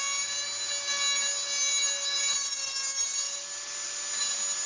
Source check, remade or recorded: recorded